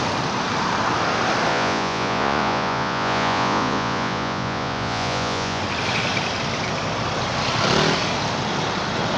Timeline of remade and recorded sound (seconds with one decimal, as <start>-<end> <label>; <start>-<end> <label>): 0.0-1.5 recorded; 1.5-5.6 remade; 5.6-9.2 recorded